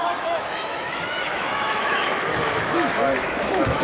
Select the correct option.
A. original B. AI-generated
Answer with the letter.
B